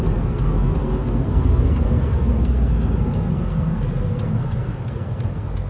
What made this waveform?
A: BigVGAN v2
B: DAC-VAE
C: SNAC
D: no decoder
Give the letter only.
C